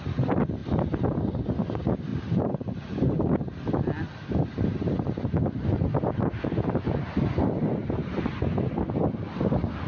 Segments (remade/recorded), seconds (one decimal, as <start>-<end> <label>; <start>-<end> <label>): 0.0-9.9 recorded

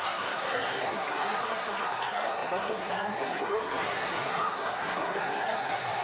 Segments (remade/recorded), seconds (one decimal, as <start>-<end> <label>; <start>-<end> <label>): 0.0-6.0 remade